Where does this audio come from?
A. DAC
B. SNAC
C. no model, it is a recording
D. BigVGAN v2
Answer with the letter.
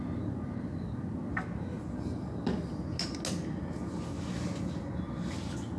C